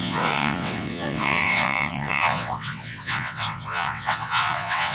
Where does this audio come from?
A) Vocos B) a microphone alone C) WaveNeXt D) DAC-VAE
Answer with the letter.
C